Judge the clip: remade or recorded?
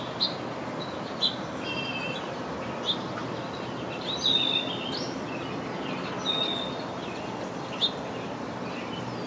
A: recorded